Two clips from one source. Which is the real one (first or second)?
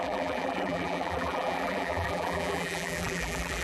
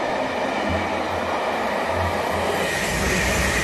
second